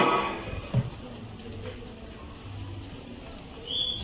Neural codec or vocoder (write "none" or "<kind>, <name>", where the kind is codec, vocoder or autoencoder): none